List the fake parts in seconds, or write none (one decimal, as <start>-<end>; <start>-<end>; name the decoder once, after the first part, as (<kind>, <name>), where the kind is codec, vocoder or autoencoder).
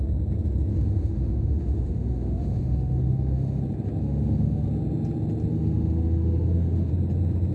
0.7-3.6 (autoencoder, DAC-VAE); 4.0-4.7; 5.5-6.9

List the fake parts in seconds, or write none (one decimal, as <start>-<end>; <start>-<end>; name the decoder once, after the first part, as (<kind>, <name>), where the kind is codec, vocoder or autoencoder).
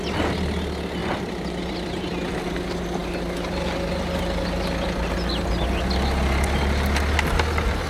1.0-1.6 (vocoder, BigVGAN v2)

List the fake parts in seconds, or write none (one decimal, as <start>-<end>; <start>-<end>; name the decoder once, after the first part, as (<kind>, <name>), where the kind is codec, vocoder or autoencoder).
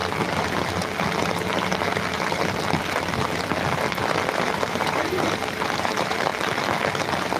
4.3-6.3 (vocoder, BigVGAN v2)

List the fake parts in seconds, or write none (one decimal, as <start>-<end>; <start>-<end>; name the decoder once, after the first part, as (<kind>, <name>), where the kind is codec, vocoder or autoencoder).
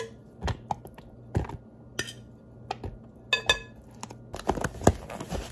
none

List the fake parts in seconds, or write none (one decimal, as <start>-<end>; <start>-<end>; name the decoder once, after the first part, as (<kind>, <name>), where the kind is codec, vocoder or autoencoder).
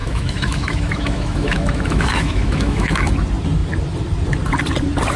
0.0-3.1 (autoencoder, DAC-VAE)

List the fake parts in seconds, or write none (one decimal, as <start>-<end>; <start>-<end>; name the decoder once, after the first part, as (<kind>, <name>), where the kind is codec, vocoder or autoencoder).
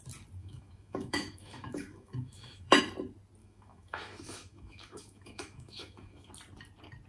0.4-2.8 (autoencoder, DAC-VAE); 3.4-6.3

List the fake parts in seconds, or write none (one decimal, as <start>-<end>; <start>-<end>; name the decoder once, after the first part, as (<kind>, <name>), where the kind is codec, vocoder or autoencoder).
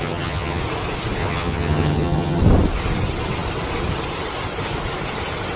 0.0-0.6 (vocoder, HiFi-GAN); 1.2-2.4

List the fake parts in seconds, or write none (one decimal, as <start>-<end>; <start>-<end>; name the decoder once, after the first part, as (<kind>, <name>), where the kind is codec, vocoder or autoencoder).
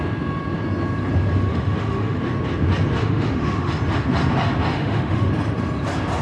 1.5-2.2 (autoencoder, DAC-VAE); 3.0-3.7; 4.7-5.3